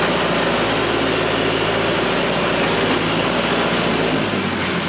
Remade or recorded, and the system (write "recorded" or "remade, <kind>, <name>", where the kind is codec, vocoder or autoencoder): recorded